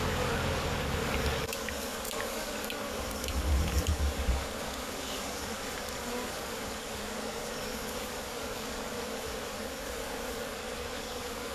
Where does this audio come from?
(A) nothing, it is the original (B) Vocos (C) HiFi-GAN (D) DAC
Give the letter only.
D